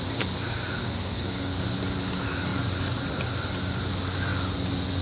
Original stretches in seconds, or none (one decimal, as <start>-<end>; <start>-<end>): 0.0-0.8; 1.6-5.0